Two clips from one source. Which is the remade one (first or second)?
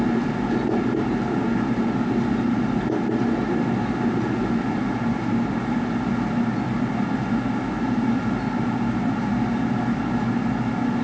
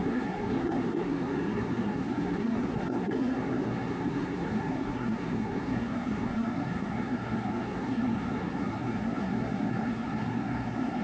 second